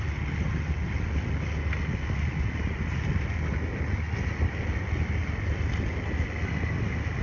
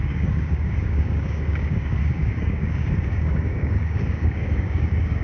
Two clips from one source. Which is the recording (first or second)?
first